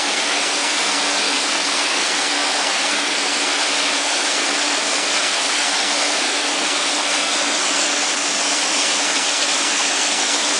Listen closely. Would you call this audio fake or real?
fake